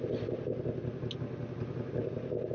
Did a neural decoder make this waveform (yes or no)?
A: no